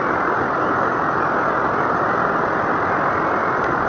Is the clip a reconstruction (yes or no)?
no